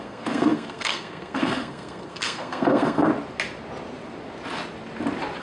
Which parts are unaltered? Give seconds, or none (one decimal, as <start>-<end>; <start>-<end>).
3.1-5.4

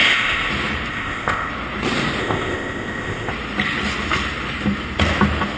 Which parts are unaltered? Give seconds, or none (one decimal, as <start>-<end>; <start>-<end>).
0.5-0.9; 1.5-2.2; 3.3-5.6